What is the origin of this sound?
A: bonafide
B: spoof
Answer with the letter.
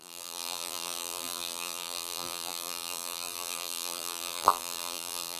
B